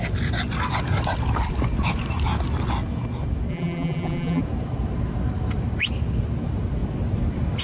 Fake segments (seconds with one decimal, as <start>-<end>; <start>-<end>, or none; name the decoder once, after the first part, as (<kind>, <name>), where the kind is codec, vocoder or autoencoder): 3.5-4.4 (vocoder, BigVGAN v2)